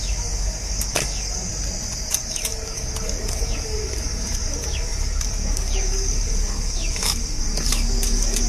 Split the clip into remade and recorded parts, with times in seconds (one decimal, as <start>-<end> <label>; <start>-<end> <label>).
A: 0.0-1.5 remade; 1.5-2.0 recorded; 2.0-8.5 remade